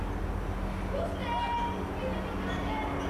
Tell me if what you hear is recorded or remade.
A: recorded